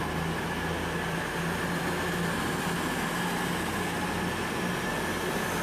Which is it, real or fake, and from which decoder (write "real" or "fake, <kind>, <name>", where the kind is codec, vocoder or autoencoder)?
real